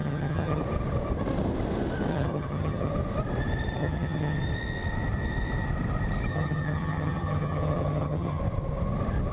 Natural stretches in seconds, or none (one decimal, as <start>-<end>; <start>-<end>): 0.6-2.1; 2.9-3.8; 4.4-6.3; 8.4-9.3